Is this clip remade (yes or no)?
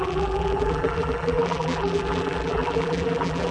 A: yes